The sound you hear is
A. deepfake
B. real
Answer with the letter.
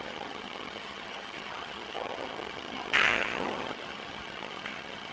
A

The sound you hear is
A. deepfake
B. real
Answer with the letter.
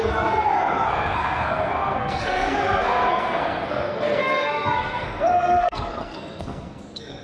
A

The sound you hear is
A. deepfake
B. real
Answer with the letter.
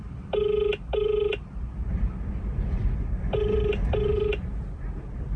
A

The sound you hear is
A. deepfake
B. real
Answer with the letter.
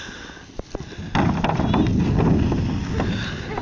B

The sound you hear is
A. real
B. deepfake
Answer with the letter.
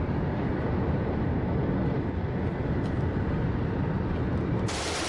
A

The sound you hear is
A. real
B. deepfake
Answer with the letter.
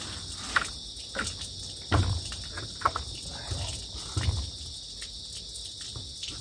A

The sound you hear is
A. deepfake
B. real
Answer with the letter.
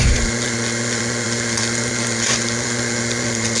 A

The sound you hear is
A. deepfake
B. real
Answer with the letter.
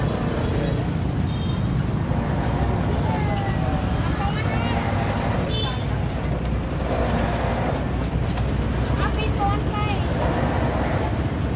B